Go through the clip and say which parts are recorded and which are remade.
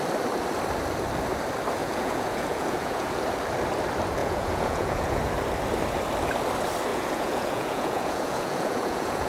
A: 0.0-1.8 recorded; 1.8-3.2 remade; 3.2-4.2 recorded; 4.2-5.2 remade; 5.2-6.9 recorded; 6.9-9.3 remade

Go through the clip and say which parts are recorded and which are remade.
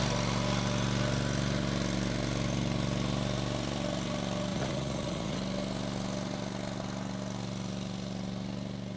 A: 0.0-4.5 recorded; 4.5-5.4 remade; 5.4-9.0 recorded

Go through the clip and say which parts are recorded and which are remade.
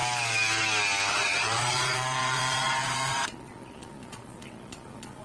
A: 0.0-1.1 recorded; 1.1-5.2 remade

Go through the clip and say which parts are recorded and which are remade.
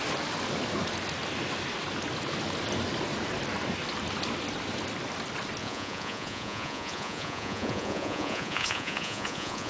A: 0.0-5.6 recorded; 5.6-9.7 remade